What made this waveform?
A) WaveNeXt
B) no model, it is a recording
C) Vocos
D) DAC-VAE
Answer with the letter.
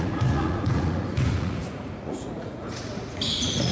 C